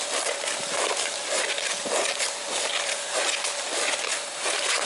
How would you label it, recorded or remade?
recorded